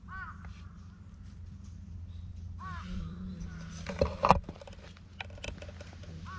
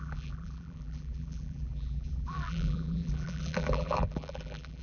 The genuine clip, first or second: first